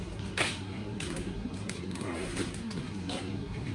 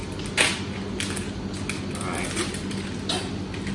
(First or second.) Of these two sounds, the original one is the second